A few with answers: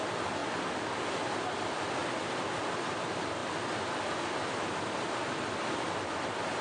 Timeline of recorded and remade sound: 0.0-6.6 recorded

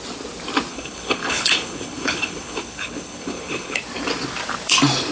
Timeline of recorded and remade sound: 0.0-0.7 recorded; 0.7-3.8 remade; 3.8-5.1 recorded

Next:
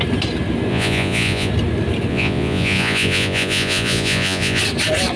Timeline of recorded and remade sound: 0.0-0.7 recorded; 0.7-1.5 remade; 1.5-2.1 recorded; 2.1-4.6 remade; 4.6-5.2 recorded

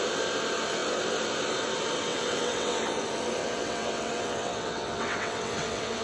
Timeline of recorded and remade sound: 0.0-2.1 recorded; 2.1-2.8 remade; 2.8-3.4 recorded; 3.4-6.0 remade

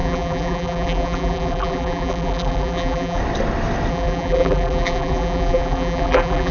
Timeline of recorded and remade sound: 0.0-3.2 remade; 3.2-3.9 recorded; 3.9-6.5 remade